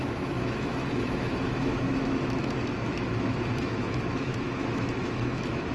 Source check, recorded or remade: remade